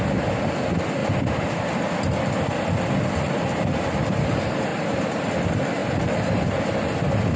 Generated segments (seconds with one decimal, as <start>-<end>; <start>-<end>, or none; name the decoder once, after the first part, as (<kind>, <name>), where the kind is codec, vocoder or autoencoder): 1.0-1.8 (vocoder, BigVGAN v2); 4.7-5.3; 5.8-6.6